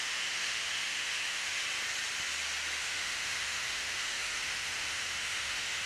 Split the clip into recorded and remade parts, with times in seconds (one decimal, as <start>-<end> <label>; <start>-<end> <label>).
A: 0.0-1.6 remade; 1.6-2.8 recorded; 2.8-5.9 remade